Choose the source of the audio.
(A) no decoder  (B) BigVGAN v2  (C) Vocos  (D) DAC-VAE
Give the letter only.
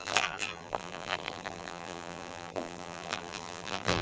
B